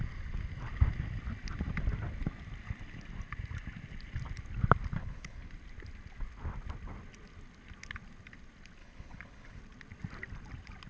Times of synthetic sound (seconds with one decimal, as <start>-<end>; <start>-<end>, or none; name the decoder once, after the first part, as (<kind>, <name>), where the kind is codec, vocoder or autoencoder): 5.0-5.5 (codec, HILCodec); 8.8-9.6